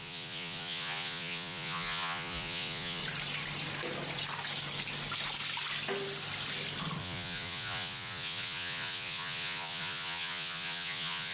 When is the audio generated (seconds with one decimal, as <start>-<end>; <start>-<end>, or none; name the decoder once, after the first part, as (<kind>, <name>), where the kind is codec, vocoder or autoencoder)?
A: 0.0-3.0 (vocoder, Vocos); 7.0-11.3